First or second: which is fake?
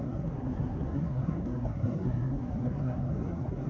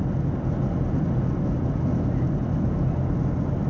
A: first